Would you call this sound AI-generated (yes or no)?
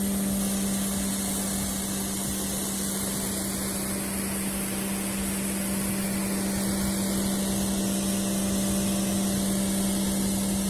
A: no